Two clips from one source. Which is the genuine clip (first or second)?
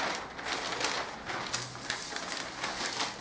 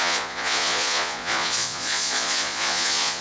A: first